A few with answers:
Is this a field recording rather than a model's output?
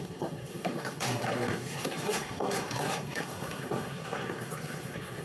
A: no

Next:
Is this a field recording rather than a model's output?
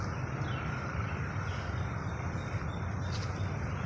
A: yes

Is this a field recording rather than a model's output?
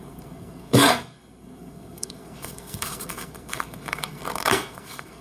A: no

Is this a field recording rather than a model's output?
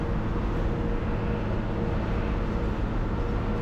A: yes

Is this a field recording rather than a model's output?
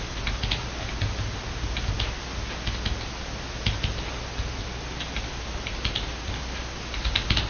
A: yes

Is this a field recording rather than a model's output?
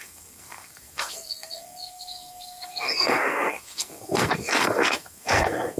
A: no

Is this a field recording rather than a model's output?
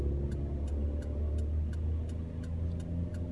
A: yes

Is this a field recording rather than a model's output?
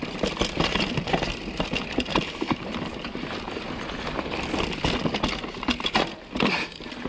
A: yes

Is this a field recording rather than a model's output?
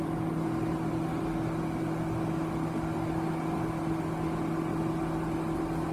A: yes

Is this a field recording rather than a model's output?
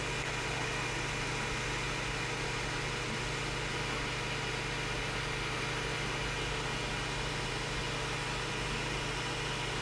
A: yes